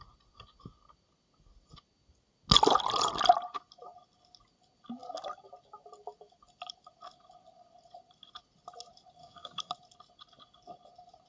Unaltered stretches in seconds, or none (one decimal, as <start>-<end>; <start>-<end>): 0.0-9.2; 9.7-11.3